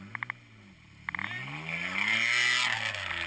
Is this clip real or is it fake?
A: real